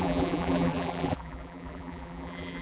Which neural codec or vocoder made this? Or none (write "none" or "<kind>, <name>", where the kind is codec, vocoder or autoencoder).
vocoder, BigVGAN v2